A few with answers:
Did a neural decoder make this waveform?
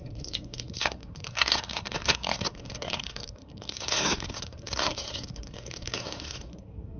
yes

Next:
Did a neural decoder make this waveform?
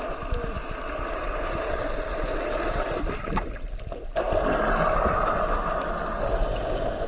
no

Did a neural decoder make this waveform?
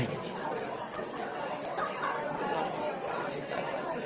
yes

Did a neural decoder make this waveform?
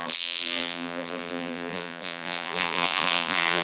yes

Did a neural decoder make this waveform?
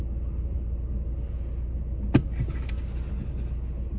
no